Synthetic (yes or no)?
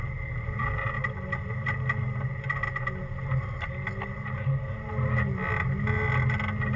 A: no